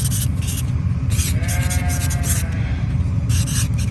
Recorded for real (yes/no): yes